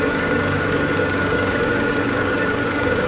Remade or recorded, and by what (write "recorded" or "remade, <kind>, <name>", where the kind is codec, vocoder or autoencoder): remade, codec, DAC